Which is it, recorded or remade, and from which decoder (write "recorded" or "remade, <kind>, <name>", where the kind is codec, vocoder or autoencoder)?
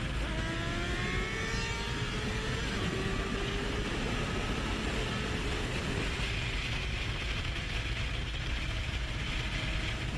recorded